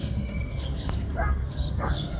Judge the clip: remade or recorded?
remade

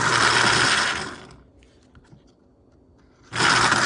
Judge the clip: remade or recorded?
recorded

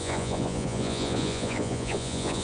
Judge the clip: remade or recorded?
remade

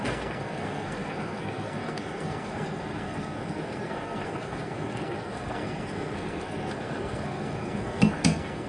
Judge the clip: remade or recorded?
remade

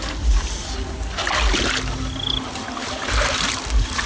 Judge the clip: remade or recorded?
recorded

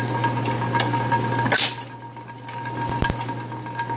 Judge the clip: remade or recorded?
recorded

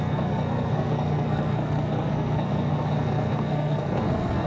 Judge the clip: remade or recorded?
remade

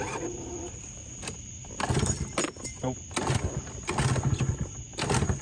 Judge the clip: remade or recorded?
recorded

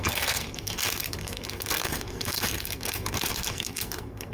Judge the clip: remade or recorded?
remade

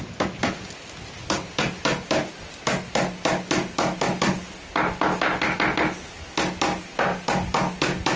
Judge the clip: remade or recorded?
recorded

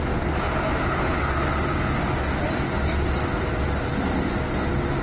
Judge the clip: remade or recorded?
recorded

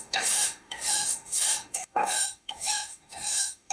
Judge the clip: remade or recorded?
remade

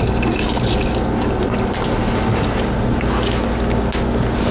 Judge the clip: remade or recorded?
recorded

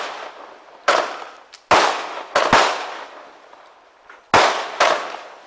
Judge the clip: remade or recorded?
recorded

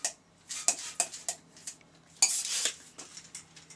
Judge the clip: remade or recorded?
recorded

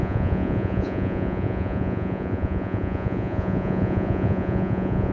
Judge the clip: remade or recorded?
remade